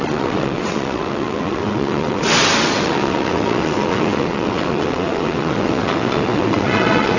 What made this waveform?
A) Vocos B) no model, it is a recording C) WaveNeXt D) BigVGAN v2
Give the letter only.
C